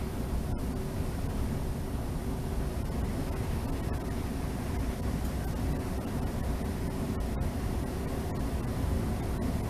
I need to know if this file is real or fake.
real